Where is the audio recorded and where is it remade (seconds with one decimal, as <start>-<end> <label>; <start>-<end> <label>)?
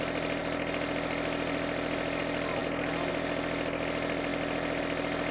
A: 0.0-5.3 recorded